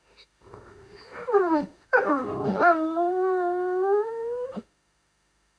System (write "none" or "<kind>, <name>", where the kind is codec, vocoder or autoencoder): autoencoder, DAC-VAE